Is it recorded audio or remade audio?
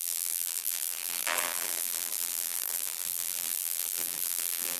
remade